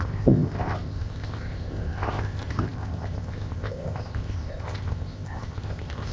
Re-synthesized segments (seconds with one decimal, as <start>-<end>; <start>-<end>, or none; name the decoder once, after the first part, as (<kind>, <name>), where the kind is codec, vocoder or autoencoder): 0.0-6.1 (codec, ZipCodec)